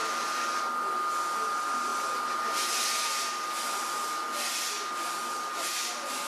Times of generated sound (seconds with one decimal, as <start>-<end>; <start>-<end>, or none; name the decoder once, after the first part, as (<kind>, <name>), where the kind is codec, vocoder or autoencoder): 0.0-0.6 (vocoder, BigVGAN v2)